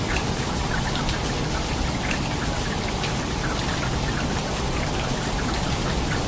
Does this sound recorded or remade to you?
recorded